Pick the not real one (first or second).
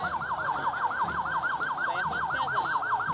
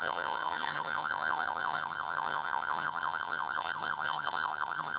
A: second